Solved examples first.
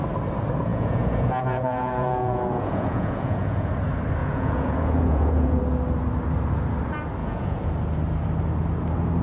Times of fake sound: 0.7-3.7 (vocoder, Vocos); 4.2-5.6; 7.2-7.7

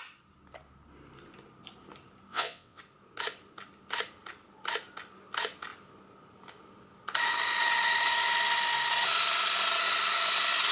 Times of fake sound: 2.3-2.8 (vocoder, WaveNeXt)

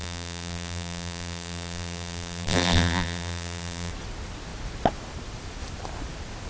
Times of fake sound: 0.0-3.9 (vocoder, BigVGAN v2)

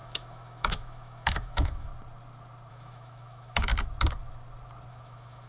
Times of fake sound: 0.0-1.9 (autoencoder, DAC-VAE); 2.7-3.7; 4.9-5.5

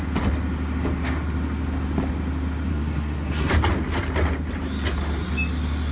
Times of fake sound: 2.7-3.5 (codec, SNAC)

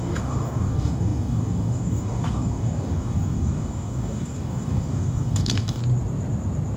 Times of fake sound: 0.0-5.8 (codec, DAC)

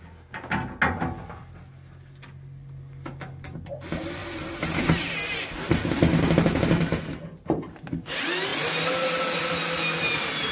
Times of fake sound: 4.2-4.8 (vocoder, BigVGAN v2)

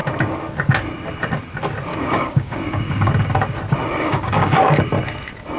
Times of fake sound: 1.9-3.1 (codec, DAC); 3.9-4.8